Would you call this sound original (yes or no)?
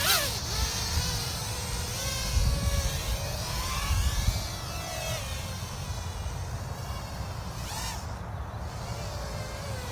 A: yes